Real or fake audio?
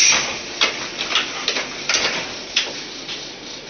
real